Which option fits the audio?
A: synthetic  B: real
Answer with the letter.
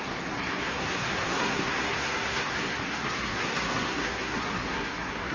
A